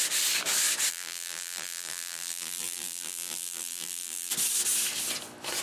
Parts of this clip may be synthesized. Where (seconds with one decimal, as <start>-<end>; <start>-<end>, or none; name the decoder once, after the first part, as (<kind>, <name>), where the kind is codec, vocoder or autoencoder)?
0.9-4.3 (vocoder, BigVGAN v2)